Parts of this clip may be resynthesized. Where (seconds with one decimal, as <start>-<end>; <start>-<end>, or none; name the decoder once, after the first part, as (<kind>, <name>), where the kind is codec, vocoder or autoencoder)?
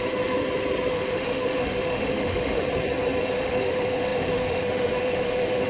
0.0-0.4 (autoencoder, DAC-VAE); 0.9-2.6; 3.2-5.7